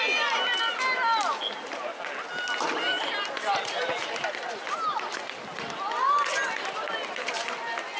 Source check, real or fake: real